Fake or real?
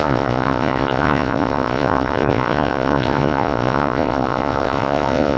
fake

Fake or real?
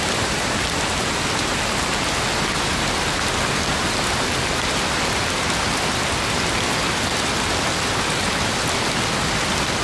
real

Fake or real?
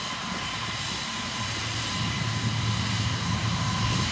real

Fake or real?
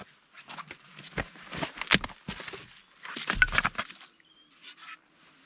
real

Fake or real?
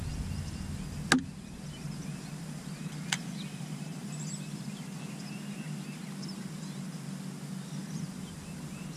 real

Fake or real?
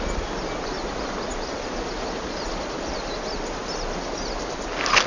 real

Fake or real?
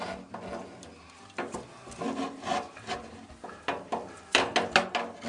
real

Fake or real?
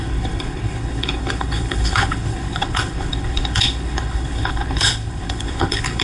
fake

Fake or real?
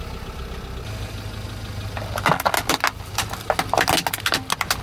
real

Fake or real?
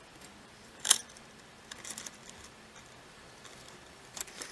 fake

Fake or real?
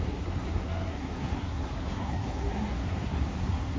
fake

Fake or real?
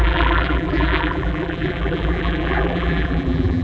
fake